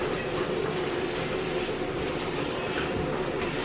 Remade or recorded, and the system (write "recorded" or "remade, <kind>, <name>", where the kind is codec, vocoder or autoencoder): recorded